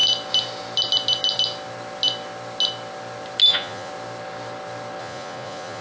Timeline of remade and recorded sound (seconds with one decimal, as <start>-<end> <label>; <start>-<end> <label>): 0.0-3.5 recorded; 3.5-3.9 remade; 3.9-5.0 recorded; 5.0-5.8 remade